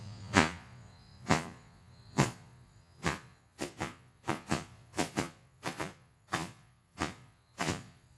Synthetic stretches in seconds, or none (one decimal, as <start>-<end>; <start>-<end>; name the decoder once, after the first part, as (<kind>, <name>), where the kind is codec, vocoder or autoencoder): 0.0-8.2 (vocoder, Vocos)